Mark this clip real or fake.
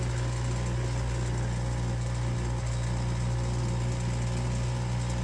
real